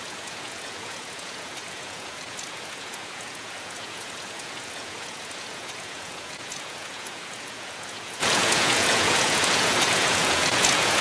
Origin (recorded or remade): remade